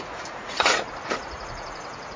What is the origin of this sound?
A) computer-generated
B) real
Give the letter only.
A